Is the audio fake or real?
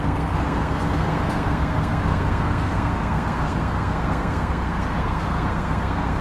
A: fake